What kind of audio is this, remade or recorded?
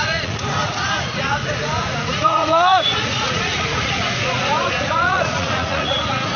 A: remade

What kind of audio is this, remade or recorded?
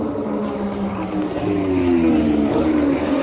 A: remade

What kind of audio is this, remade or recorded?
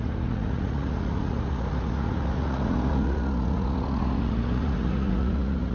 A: remade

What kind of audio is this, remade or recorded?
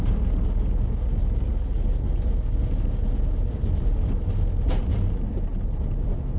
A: recorded